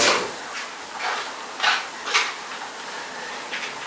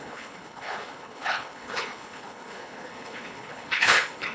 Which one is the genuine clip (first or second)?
first